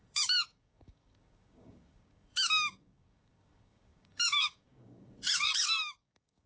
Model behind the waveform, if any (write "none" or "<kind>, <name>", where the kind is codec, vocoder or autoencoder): codec, DAC